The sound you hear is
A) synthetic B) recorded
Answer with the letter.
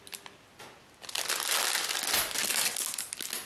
B